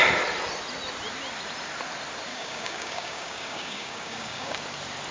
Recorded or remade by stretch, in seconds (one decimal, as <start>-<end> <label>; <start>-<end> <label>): 0.0-2.3 recorded; 2.3-4.6 remade; 4.6-5.1 recorded